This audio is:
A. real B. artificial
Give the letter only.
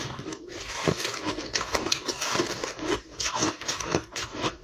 B